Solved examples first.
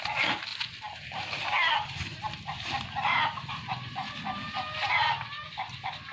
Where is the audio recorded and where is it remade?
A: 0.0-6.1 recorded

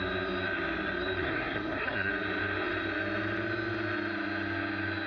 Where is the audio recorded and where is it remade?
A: 0.0-1.2 recorded; 1.2-2.1 remade; 2.1-5.1 recorded

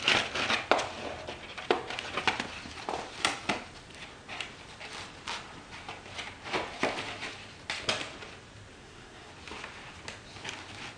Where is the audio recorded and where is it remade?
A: 0.0-8.8 recorded; 8.8-9.3 remade; 9.3-11.0 recorded

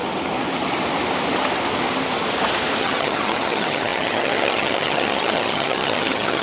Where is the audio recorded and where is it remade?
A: 0.0-2.8 recorded; 2.8-6.4 remade

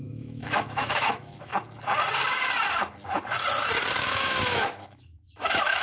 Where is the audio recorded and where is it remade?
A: 0.0-1.5 remade; 1.5-4.0 recorded; 4.0-5.8 remade

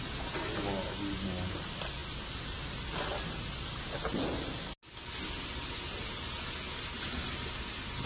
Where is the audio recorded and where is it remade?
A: 0.0-8.1 recorded